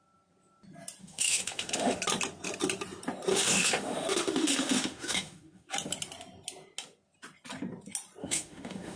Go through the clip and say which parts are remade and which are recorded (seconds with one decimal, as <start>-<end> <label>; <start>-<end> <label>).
0.0-1.0 recorded; 1.0-2.0 remade; 2.0-3.3 recorded; 3.3-5.7 remade; 5.7-8.2 recorded; 8.2-9.0 remade

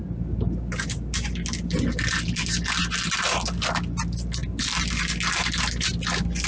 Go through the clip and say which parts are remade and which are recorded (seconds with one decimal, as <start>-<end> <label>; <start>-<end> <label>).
0.0-6.5 recorded

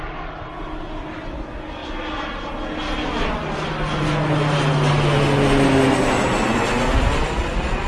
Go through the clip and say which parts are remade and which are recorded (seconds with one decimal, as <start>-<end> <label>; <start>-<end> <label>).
0.0-7.9 recorded

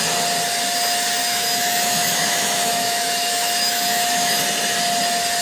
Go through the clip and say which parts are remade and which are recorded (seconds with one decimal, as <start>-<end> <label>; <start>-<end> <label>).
0.0-1.2 recorded; 1.2-4.4 remade; 4.4-5.4 recorded

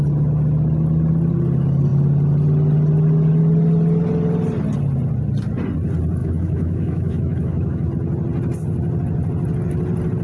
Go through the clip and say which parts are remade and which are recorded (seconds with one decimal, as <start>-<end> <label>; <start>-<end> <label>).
0.0-6.2 recorded; 6.2-7.9 remade; 7.9-10.2 recorded

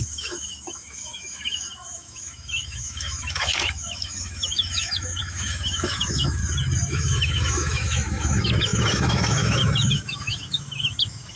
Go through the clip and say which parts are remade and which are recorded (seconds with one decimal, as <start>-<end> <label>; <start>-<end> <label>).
0.0-6.4 remade; 6.4-6.9 recorded; 6.9-11.4 remade